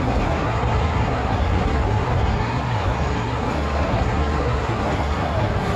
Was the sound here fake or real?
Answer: fake